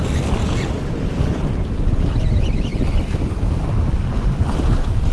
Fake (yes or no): no